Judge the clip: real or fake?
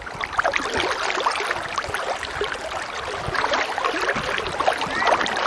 real